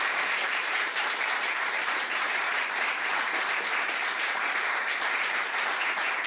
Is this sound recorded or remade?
remade